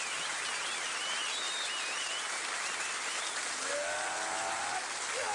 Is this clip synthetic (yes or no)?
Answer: no